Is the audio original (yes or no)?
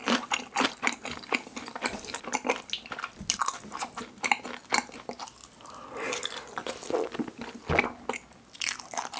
yes